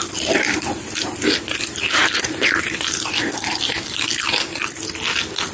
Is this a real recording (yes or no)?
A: yes